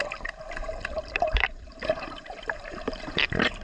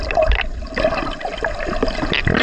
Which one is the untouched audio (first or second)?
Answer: second